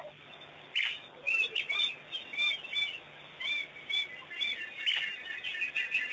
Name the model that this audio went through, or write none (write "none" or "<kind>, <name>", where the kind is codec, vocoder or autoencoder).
none